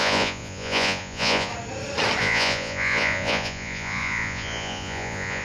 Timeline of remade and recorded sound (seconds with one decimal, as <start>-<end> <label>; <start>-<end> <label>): 0.0-1.5 remade; 1.5-2.2 recorded; 2.2-5.4 remade